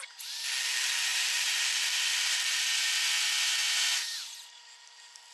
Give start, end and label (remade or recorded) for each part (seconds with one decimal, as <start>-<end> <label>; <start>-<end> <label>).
0.0-1.1 recorded; 1.1-2.1 remade; 2.1-5.3 recorded